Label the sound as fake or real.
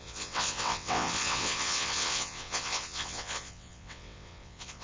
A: fake